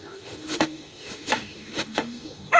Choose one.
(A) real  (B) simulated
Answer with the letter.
B